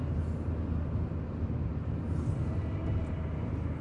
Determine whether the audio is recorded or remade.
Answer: recorded